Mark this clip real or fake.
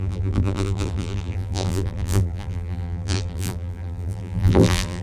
fake